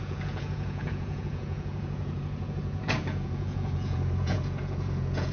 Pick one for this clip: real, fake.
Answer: fake